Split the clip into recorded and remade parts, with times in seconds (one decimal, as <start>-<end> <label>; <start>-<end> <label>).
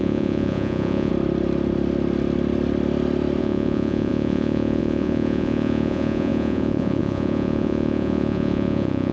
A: 0.0-1.1 remade; 1.1-3.4 recorded; 3.4-9.1 remade